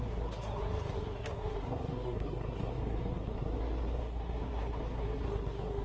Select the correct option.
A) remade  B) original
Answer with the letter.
A